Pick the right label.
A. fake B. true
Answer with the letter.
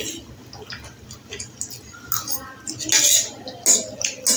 B